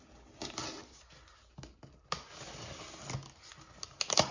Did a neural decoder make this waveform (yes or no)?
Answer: no